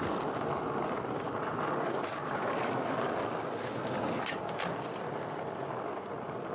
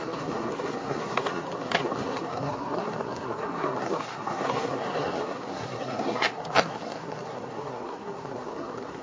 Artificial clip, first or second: second